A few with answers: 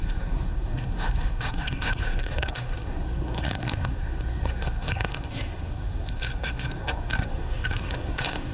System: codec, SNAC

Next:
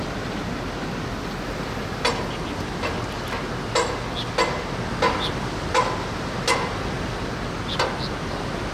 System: none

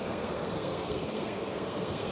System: codec, SNAC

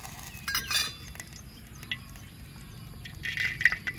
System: none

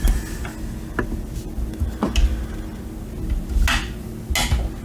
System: none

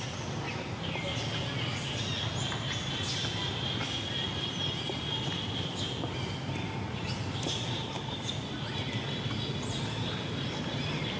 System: none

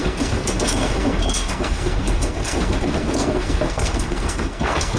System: codec, SNAC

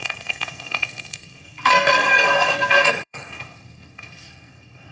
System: codec, SNAC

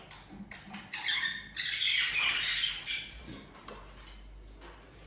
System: none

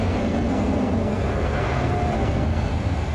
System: codec, SNAC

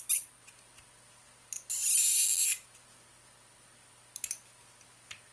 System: none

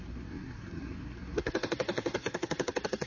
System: codec, SNAC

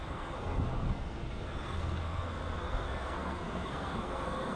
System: codec, SNAC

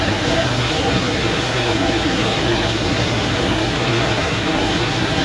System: codec, SNAC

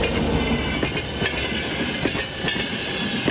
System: none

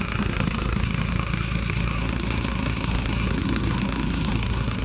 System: codec, SNAC